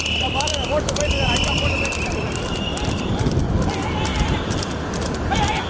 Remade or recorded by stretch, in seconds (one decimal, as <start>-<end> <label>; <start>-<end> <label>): 0.0-5.7 recorded